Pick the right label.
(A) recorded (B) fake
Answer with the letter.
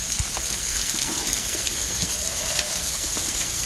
B